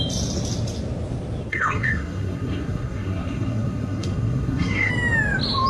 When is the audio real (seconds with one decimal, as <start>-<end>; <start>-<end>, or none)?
0.0-1.5; 4.9-5.7